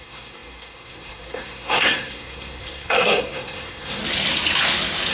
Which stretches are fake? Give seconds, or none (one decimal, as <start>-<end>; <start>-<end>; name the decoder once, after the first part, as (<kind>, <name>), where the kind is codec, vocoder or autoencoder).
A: 0.0-4.0 (codec, SNAC)